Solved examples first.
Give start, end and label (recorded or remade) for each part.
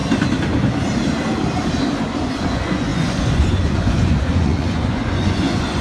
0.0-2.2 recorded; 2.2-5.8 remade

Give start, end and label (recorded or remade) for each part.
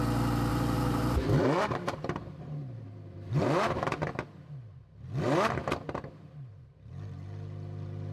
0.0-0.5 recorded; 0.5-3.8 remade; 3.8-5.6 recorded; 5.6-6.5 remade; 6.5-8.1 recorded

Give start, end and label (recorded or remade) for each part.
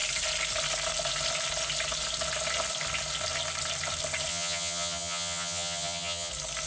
0.0-4.3 recorded; 4.3-6.3 remade; 6.3-6.7 recorded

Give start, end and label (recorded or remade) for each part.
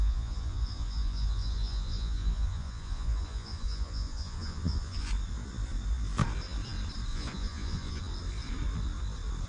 0.0-5.1 remade; 5.1-7.1 recorded; 7.1-8.0 remade; 8.0-9.5 recorded